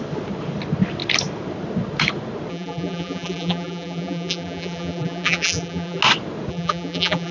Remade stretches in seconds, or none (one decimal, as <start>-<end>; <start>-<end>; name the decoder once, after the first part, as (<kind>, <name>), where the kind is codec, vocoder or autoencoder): 2.5-6.0 (vocoder, BigVGAN v2); 6.5-7.3